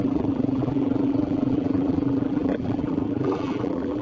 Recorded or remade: remade